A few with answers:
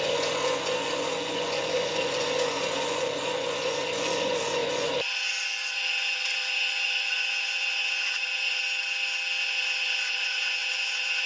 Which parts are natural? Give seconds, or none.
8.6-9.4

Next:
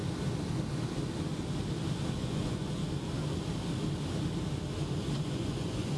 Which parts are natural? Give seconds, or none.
0.0-2.2; 2.8-5.0

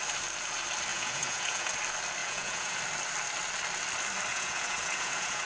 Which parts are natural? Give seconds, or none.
0.0-0.9; 1.7-2.2; 2.8-4.3

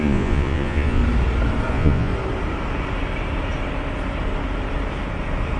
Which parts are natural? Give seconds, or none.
1.0-1.7; 2.1-5.6

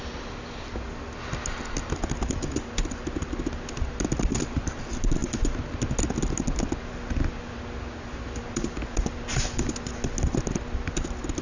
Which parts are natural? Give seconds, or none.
0.0-11.4

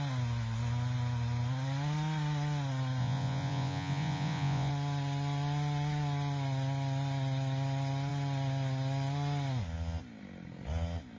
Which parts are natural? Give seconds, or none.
0.0-3.0; 4.7-11.2